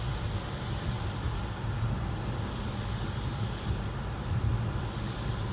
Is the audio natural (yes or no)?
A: yes